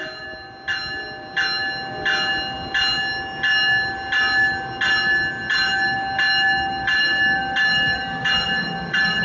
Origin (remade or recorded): recorded